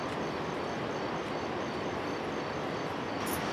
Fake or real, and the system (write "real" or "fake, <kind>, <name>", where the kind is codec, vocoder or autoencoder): real